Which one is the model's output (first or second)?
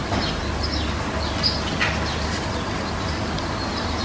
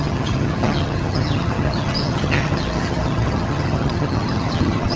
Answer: second